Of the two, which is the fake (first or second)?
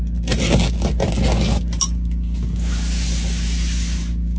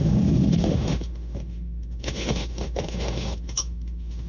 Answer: second